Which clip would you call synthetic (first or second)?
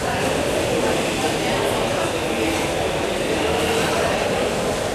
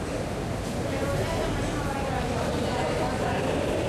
second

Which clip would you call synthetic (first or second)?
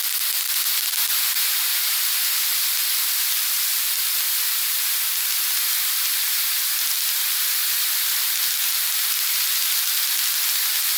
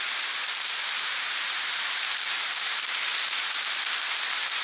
second